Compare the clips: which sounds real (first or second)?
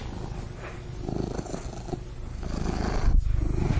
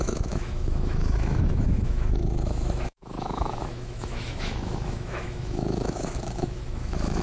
first